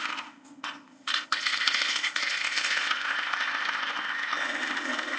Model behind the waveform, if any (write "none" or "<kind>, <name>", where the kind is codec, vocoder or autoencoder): codec, ZipCodec